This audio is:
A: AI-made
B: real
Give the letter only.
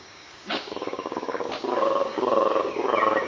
A